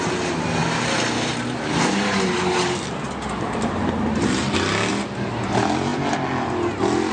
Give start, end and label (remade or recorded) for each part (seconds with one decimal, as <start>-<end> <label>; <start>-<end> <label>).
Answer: 0.0-7.1 recorded